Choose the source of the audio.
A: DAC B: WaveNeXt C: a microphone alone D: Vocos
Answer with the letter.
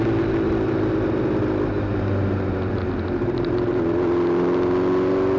C